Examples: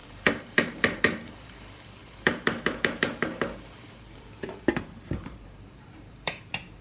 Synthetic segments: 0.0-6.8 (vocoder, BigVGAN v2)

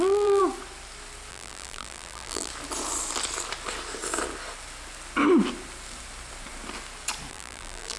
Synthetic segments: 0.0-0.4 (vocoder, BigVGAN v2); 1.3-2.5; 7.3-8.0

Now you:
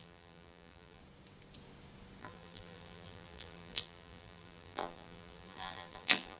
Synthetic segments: 0.0-1.0 (vocoder, BigVGAN v2); 2.2-6.4

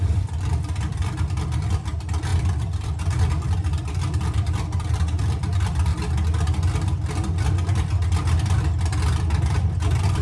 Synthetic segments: 0.0-5.9 (vocoder, BigVGAN v2); 9.4-10.2

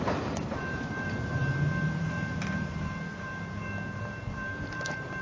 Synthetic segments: 0.0-1.4 (vocoder, BigVGAN v2); 2.0-5.2

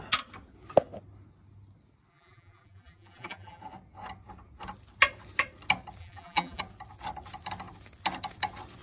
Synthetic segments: 2.1-3.6 (vocoder, BigVGAN v2); 6.0-6.6